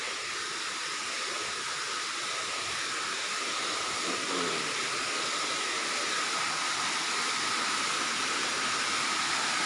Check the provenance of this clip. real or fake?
real